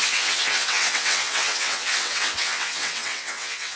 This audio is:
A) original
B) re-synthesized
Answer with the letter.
B